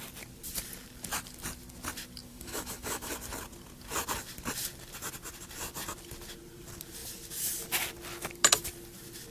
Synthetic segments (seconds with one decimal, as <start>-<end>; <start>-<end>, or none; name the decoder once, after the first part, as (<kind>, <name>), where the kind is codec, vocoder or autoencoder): 2.3-3.1 (autoencoder, DAC-VAE)